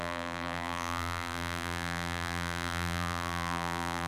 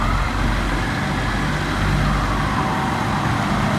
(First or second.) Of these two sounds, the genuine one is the second